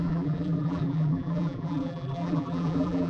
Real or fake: fake